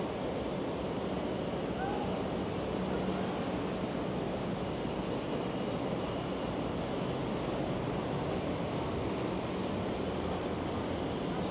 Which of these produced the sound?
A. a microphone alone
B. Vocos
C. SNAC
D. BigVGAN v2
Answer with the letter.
A